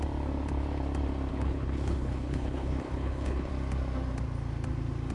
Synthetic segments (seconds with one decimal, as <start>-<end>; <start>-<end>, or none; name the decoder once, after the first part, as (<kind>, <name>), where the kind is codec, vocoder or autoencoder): 1.3-3.5 (codec, HILCodec)